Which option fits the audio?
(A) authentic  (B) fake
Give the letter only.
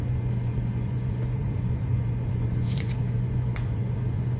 B